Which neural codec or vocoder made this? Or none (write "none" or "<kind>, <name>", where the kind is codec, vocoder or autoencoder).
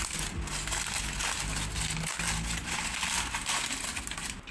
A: none